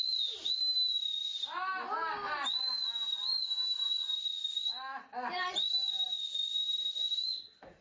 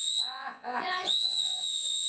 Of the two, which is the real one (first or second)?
first